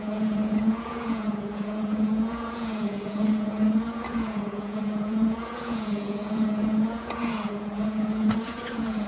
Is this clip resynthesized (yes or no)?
yes